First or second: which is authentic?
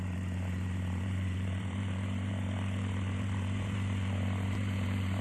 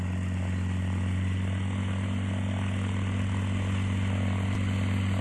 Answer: second